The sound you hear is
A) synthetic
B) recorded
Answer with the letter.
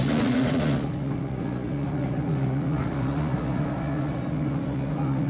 A